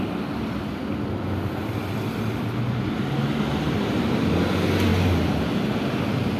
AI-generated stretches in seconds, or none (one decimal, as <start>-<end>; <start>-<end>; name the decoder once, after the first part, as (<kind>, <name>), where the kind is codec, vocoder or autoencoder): none